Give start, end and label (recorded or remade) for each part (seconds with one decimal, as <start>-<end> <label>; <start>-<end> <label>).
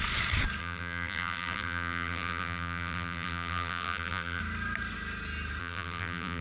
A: 0.0-0.6 recorded; 0.6-4.4 remade; 4.4-5.6 recorded; 5.6-6.4 remade